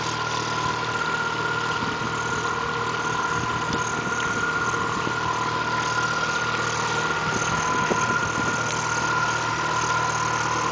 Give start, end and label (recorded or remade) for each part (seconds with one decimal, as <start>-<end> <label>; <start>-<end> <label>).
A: 0.0-10.7 recorded